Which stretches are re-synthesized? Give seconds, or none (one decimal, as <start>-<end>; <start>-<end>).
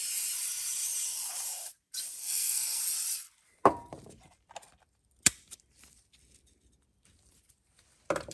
2.2-2.8